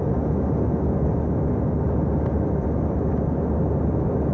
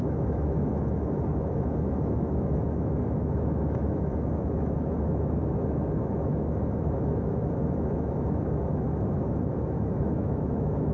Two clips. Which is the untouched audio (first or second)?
first